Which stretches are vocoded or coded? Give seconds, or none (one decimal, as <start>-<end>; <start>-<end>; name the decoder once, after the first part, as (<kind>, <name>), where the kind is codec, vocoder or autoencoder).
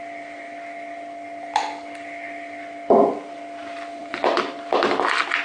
3.6-4.1 (vocoder, BigVGAN v2)